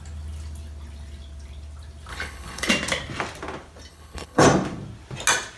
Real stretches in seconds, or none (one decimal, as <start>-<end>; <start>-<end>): 0.0-2.1; 2.7-3.9; 4.4-5.6